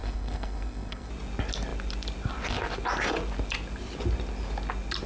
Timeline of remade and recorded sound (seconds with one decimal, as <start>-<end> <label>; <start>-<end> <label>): 0.0-1.1 remade; 1.1-5.1 recorded